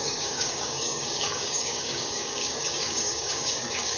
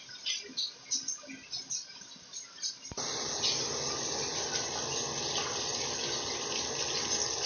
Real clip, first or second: second